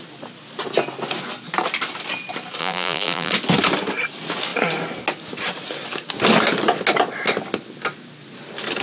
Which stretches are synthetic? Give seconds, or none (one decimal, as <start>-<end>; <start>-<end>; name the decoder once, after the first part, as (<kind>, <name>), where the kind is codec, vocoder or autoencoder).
2.6-3.3 (vocoder, BigVGAN v2)